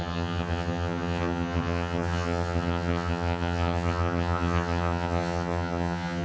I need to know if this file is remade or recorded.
remade